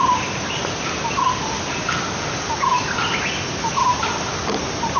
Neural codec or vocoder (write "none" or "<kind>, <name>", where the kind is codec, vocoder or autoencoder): none